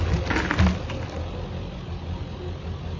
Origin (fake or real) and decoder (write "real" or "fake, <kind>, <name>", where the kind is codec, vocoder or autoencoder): real